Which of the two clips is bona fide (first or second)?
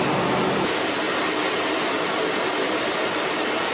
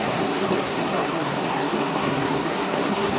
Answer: first